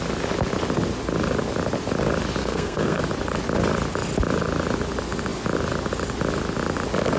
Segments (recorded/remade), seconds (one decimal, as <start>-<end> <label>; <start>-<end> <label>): 0.0-2.4 recorded; 2.4-3.0 remade; 3.0-7.2 recorded

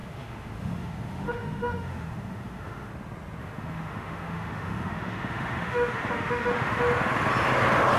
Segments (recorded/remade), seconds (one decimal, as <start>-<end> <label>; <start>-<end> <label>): 0.0-2.9 remade; 2.9-3.4 recorded; 3.4-6.8 remade; 6.8-8.0 recorded

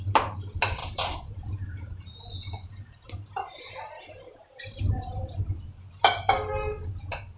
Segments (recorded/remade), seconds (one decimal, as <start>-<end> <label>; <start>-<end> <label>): 0.0-0.8 recorded; 0.8-4.8 remade; 4.8-7.4 recorded

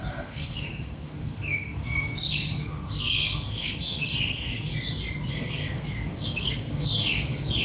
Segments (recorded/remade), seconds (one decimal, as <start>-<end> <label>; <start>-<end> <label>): 0.0-4.7 remade; 4.7-5.3 recorded; 5.3-7.6 remade

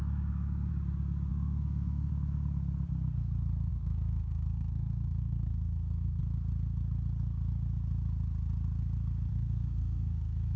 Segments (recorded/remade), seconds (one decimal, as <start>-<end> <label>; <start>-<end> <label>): 0.0-0.7 remade; 0.7-1.3 recorded; 1.3-2.1 remade; 2.1-3.7 recorded; 3.7-6.2 remade; 6.2-9.3 recorded; 9.3-10.6 remade

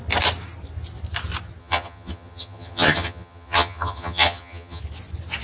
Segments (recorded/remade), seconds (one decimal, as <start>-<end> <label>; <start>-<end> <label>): 0.0-1.6 recorded; 1.6-4.8 remade; 4.8-5.4 recorded

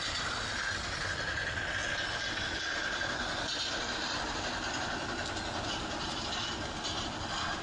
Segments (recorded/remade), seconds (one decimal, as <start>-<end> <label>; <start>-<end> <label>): 0.0-7.6 recorded

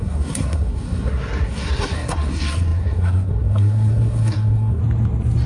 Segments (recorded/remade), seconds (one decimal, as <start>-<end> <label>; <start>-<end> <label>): 0.0-4.8 remade; 4.8-5.5 recorded